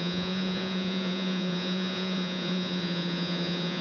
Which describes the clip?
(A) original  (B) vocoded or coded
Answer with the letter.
B